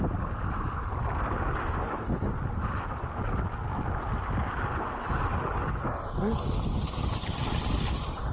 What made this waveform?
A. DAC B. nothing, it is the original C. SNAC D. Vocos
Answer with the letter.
B